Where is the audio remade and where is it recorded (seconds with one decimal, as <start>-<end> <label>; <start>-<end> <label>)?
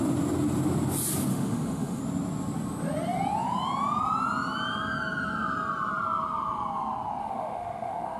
0.0-1.3 recorded; 1.3-2.0 remade; 2.0-7.2 recorded; 7.2-8.2 remade